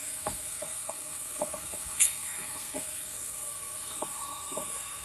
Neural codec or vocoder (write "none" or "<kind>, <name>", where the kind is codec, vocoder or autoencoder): codec, SNAC